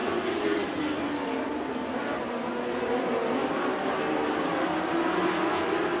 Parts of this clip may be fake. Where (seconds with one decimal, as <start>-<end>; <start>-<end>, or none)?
0.0-0.8

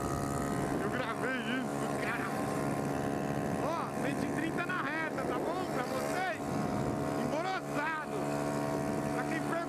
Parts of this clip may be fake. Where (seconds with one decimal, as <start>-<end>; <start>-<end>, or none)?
1.7-2.6